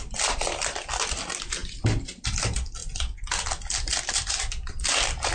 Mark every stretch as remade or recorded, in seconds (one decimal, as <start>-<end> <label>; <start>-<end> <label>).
0.0-5.3 recorded